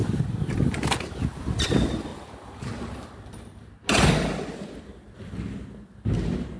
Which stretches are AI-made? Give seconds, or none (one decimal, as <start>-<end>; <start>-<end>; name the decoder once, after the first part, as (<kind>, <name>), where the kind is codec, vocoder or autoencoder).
0.0-0.9 (vocoder, BigVGAN v2); 2.1-3.7